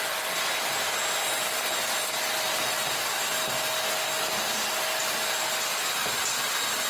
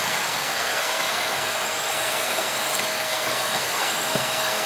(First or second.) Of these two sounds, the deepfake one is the second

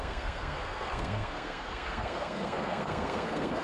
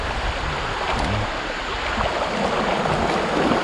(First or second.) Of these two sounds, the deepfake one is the first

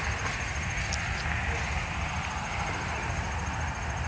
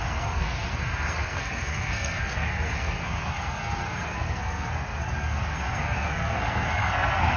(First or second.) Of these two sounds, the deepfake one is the second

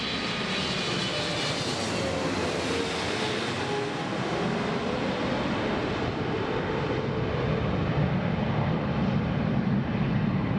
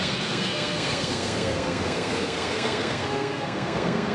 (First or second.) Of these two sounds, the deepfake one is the second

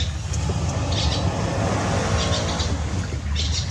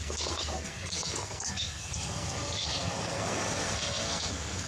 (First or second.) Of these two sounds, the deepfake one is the second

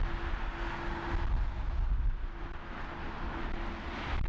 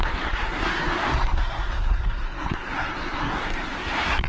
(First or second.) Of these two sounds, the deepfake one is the second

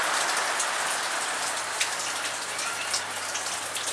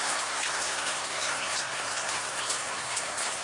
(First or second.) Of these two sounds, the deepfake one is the second